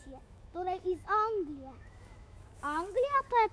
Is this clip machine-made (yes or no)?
yes